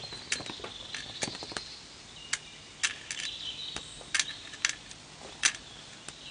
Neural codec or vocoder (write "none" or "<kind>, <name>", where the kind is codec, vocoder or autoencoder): none